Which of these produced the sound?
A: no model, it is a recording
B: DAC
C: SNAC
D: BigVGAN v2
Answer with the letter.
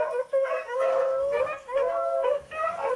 C